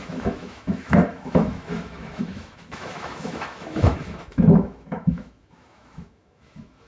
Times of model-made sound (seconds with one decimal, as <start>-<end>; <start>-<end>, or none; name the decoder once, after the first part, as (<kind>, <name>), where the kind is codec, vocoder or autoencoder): 0.0-6.9 (autoencoder, DAC-VAE)